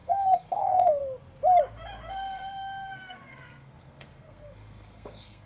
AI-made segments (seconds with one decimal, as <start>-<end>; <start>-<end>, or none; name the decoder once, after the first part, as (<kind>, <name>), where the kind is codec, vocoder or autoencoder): 0.0-1.0 (codec, SNAC); 2.1-5.5